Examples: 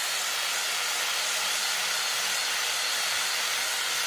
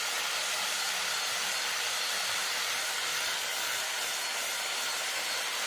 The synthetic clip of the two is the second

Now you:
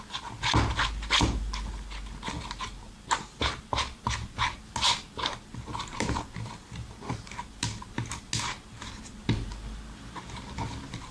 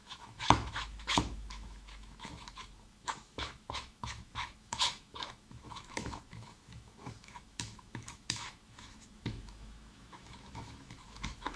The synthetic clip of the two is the second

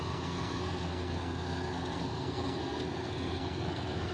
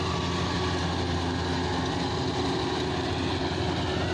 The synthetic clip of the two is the first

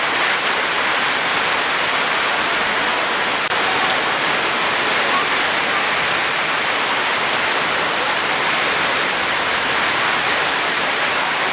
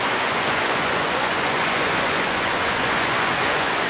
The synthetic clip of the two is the second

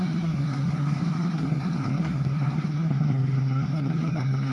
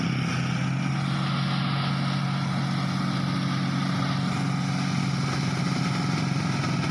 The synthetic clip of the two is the first